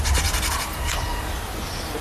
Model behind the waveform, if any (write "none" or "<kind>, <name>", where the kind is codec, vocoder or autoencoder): none